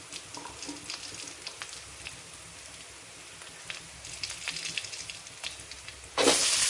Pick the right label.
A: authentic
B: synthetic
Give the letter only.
A